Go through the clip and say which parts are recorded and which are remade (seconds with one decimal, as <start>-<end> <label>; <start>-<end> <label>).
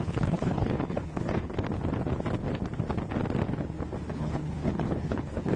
0.0-1.5 remade; 1.5-4.1 recorded; 4.1-5.6 remade